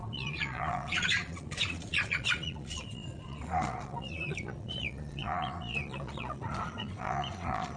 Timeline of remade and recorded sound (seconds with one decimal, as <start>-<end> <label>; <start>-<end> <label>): 0.0-7.8 remade